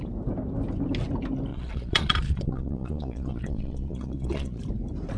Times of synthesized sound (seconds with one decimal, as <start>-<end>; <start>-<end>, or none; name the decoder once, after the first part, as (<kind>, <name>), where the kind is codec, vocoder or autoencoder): 1.5-4.6 (vocoder, Vocos)